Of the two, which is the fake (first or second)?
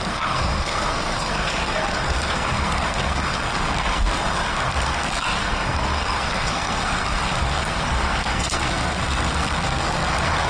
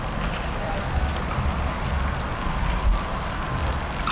first